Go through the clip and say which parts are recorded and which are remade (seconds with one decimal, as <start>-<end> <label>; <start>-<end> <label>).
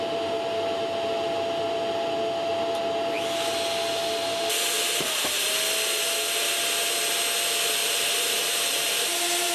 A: 0.0-7.8 recorded; 7.8-9.5 remade